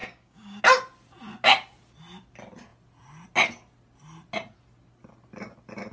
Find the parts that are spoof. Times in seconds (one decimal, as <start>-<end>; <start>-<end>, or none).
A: 0.0-0.6